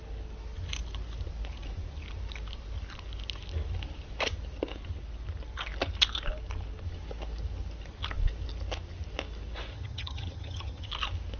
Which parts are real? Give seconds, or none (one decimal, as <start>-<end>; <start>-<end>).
0.0-9.7; 10.9-11.4